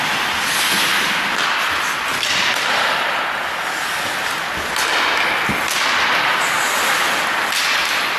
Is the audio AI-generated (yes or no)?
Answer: no